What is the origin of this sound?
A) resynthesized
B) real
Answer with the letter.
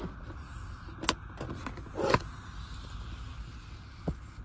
B